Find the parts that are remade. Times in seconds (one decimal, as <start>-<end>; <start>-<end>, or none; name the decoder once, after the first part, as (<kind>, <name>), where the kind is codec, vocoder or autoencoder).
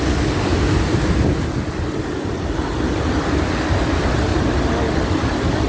0.0-0.5 (vocoder, BigVGAN v2); 3.9-4.3